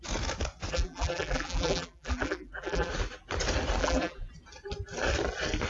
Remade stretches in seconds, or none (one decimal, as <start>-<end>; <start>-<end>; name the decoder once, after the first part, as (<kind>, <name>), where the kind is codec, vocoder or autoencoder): 0.7-2.9 (vocoder, BigVGAN v2); 3.8-4.3